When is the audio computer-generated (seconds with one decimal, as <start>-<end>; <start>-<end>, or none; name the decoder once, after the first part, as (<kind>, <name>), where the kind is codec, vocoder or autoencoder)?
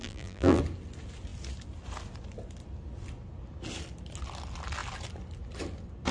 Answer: 0.0-0.6 (vocoder, BigVGAN v2)